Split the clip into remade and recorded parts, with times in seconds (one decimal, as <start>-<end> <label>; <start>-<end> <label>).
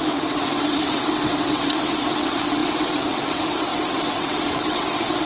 0.0-5.3 remade